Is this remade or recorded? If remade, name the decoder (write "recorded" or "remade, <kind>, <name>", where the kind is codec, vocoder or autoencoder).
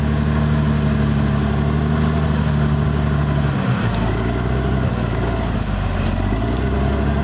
recorded